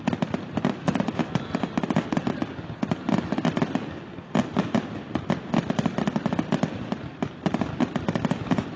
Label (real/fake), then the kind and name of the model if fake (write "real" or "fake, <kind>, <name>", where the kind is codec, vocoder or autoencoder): real